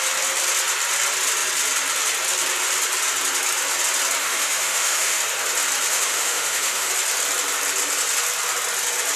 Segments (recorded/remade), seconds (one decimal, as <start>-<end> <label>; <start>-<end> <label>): 0.0-4.2 recorded; 4.2-5.2 remade; 5.2-5.9 recorded; 5.9-6.9 remade; 6.9-9.2 recorded